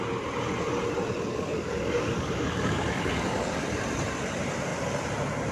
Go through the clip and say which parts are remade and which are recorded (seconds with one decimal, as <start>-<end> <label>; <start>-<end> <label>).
0.0-1.3 recorded; 1.3-3.6 remade; 3.6-5.5 recorded